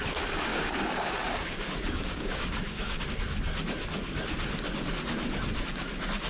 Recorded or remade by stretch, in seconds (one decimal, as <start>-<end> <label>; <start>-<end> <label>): 0.0-0.5 recorded; 0.5-3.0 remade; 3.0-6.3 recorded